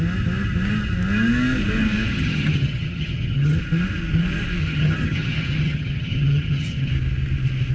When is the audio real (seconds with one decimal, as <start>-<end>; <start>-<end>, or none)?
0.0-2.1; 3.6-4.6; 6.9-7.7